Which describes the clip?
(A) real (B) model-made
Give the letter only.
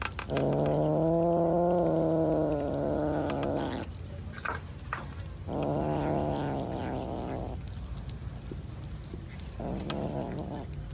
A